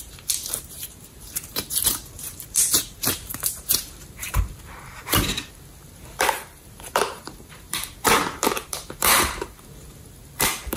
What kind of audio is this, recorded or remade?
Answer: remade